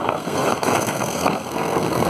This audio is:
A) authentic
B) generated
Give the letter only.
B